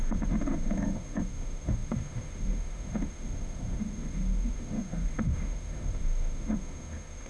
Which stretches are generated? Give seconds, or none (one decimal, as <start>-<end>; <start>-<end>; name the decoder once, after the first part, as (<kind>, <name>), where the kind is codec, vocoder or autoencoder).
0.0-7.3 (autoencoder, DAC-VAE)